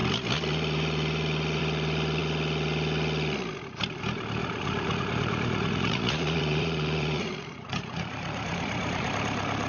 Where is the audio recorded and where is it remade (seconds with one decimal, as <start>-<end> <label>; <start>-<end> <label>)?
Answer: 0.0-4.4 recorded; 4.4-9.1 remade; 9.1-9.7 recorded